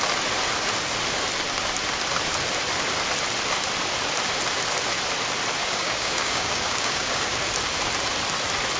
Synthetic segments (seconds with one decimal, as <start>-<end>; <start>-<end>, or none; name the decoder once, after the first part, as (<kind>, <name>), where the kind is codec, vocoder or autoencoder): 5.6-7.4 (codec, DAC)